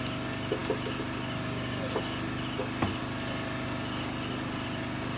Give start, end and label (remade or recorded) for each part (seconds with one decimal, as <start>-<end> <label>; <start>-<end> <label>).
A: 0.0-5.2 recorded